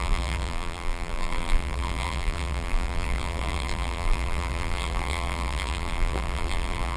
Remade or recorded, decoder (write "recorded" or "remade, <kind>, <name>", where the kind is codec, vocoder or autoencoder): remade, vocoder, BigVGAN v2